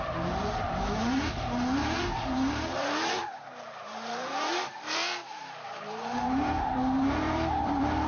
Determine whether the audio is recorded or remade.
remade